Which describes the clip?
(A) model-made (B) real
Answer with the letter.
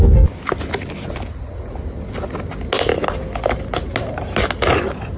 B